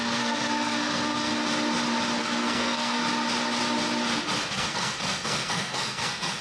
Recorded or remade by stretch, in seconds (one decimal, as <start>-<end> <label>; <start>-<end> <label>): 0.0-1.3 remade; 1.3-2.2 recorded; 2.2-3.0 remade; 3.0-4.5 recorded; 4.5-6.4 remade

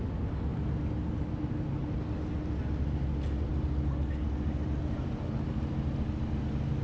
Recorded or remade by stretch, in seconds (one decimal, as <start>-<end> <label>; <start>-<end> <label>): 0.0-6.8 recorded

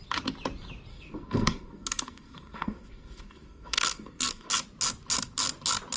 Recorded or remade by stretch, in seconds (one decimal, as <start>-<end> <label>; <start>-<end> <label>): 0.0-0.9 recorded; 0.9-4.5 remade; 4.5-6.0 recorded

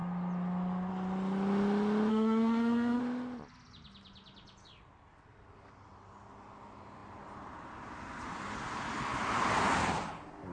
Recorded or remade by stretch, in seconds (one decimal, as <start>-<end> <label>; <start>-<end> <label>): 0.0-2.1 recorded; 2.1-3.0 remade; 3.0-10.5 recorded